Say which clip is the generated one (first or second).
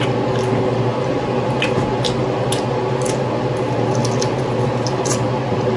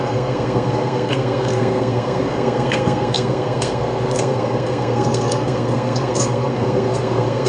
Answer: second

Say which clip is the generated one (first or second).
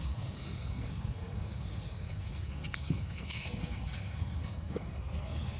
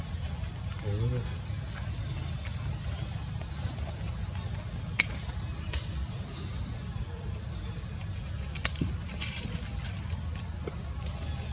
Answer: first